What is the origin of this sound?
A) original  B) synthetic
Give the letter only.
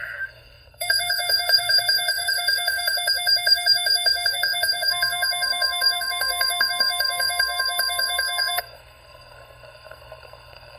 B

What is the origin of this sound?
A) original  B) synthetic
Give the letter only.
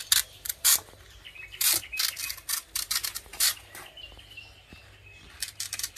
A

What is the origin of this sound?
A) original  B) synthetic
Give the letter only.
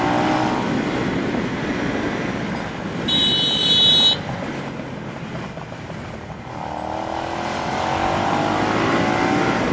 A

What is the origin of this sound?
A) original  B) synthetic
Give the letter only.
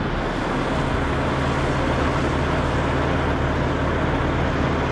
A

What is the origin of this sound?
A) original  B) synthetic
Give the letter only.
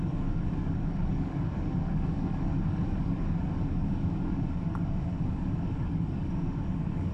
B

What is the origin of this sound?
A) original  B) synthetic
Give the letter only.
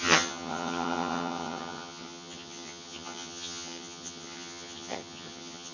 B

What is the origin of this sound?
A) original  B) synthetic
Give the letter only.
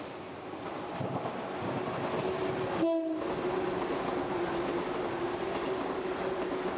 A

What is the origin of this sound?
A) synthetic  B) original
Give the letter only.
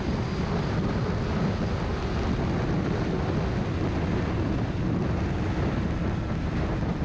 B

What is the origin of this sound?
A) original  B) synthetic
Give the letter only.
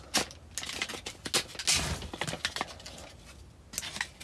A